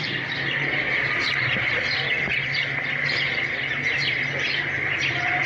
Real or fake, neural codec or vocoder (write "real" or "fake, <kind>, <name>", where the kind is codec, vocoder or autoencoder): fake, vocoder, BigVGAN v2